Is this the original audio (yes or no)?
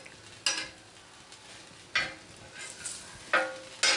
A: yes